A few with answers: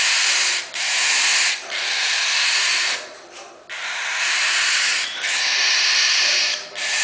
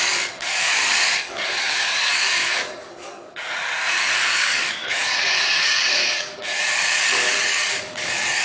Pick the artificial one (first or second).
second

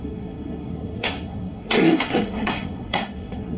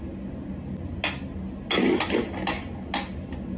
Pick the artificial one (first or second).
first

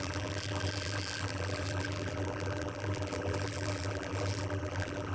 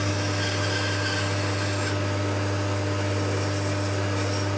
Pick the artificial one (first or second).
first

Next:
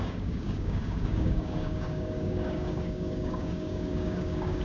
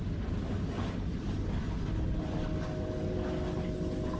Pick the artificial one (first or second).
first